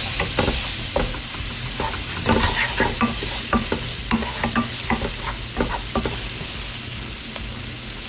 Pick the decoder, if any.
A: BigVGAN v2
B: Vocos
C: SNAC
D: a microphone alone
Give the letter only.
D